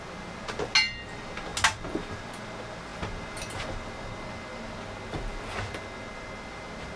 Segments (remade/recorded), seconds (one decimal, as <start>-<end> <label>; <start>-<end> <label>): 0.0-7.0 recorded